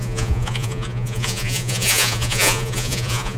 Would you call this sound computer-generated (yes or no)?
yes